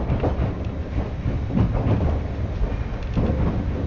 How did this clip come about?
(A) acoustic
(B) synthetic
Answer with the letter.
A